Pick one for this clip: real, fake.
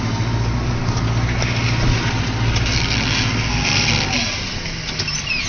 real